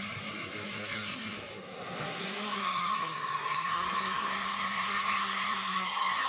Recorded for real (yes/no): no